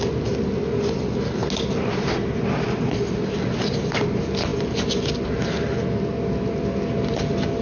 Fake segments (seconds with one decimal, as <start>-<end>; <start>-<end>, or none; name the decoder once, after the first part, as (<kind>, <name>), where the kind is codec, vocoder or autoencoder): none